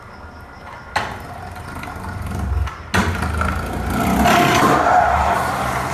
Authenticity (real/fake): real